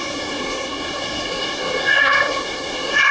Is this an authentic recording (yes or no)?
no